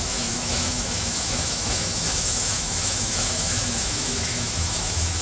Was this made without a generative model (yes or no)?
no